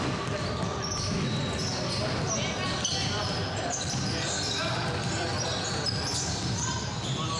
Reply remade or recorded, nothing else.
recorded